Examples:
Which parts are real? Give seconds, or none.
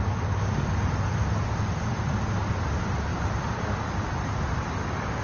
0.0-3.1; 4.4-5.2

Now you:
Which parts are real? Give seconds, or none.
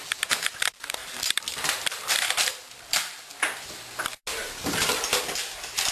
3.3-4.4; 5.1-5.9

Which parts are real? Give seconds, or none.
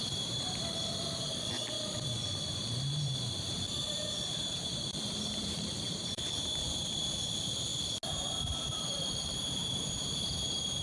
7.7-8.6